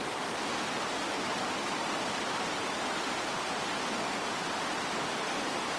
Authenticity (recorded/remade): recorded